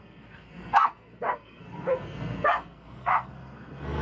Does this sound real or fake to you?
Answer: fake